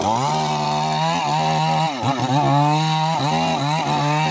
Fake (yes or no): no